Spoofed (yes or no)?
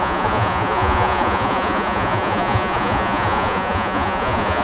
yes